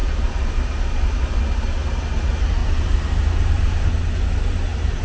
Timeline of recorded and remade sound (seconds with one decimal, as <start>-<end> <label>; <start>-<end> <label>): 0.0-2.6 recorded; 2.6-3.8 remade; 3.8-5.0 recorded